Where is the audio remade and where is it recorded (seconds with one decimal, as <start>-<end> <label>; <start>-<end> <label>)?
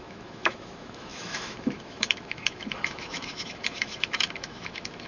0.0-5.1 remade